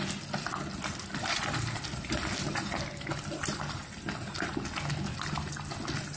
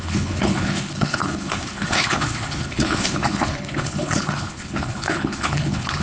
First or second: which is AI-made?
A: second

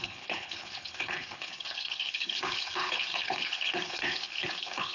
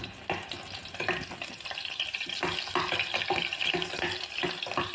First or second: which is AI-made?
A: first